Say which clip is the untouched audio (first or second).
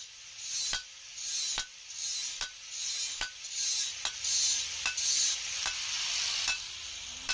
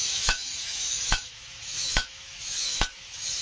first